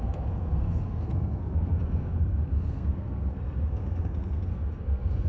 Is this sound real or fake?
fake